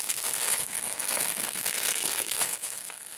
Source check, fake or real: fake